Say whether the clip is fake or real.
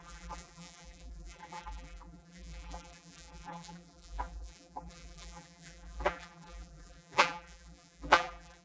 fake